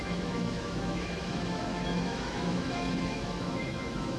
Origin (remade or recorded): remade